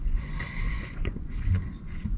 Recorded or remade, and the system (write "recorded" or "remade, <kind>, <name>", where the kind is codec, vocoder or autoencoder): remade, vocoder, Vocos